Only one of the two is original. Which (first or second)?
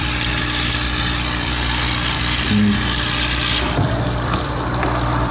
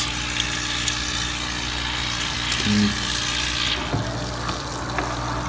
second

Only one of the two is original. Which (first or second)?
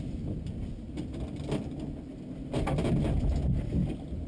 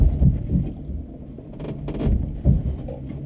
second